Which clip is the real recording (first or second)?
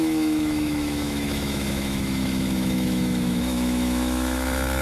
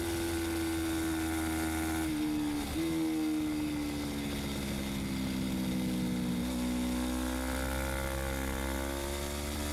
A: second